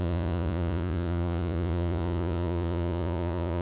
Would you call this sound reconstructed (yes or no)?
yes